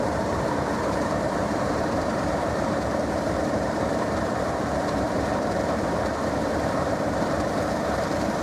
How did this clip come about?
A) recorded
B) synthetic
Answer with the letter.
B